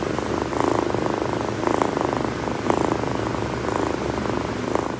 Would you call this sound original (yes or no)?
yes